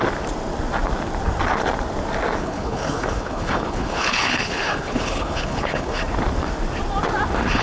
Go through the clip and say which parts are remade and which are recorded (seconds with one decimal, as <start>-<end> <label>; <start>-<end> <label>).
0.0-2.4 recorded; 2.4-6.0 remade; 6.0-7.6 recorded